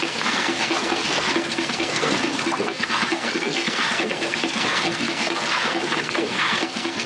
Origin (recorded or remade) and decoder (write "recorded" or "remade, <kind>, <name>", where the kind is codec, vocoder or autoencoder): remade, codec, SNAC